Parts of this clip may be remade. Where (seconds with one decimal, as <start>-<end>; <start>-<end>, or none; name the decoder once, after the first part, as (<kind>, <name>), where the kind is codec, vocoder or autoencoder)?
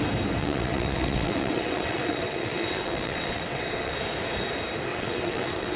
0.4-3.9 (vocoder, WaveNeXt); 4.9-5.8